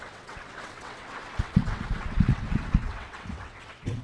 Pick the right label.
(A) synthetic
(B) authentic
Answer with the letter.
A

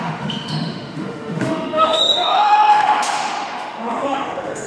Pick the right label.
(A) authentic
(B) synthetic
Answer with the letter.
B